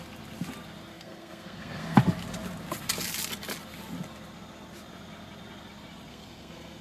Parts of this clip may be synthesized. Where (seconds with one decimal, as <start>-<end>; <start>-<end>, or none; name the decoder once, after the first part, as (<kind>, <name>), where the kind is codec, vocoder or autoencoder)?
0.9-2.0 (codec, SNAC); 6.1-6.8